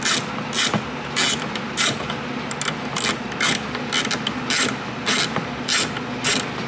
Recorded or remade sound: recorded